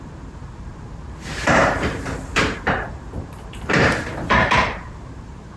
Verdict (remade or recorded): remade